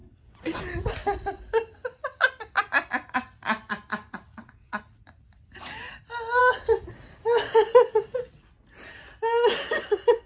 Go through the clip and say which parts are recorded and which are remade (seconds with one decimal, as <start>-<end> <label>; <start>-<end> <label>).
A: 0.0-0.6 remade; 0.6-4.3 recorded; 4.3-4.8 remade; 4.8-10.3 recorded